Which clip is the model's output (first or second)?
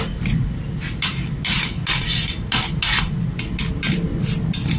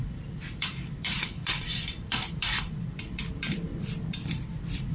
second